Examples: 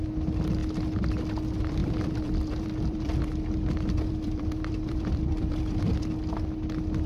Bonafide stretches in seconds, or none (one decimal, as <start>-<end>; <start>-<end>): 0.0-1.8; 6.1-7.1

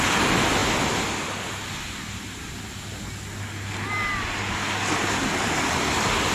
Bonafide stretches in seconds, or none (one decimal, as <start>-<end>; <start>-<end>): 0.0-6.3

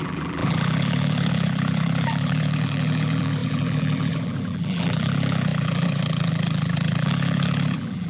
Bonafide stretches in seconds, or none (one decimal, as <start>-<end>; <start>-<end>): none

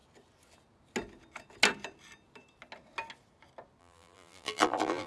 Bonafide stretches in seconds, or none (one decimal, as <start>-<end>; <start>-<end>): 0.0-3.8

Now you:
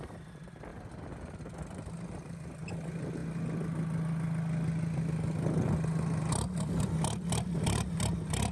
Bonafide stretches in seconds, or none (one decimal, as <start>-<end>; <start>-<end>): 0.7-1.4; 3.2-6.2

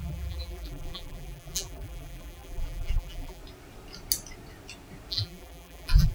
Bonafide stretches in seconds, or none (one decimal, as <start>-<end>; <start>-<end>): 3.4-5.1

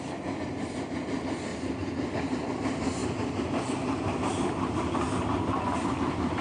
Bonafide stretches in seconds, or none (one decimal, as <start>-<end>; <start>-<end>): 1.5-2.5; 3.0-3.6